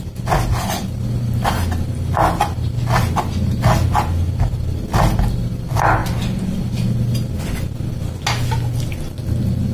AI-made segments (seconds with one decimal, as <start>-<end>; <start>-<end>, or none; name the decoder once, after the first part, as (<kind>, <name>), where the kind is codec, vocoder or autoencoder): none